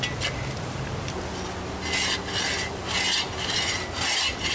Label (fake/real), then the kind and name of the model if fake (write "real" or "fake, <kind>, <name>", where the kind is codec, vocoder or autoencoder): real